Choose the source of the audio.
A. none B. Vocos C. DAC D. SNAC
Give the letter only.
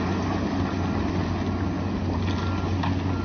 A